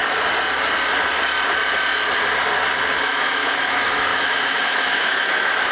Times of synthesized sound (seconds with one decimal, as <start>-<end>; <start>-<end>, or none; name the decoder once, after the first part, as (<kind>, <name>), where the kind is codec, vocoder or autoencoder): 3.0-5.7 (autoencoder, DAC-VAE)